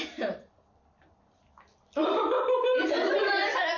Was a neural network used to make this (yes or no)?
yes